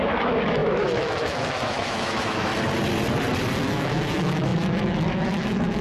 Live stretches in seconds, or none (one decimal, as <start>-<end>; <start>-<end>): 2.5-3.6